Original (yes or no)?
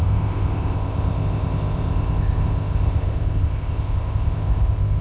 no